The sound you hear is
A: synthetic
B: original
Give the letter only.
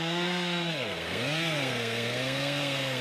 A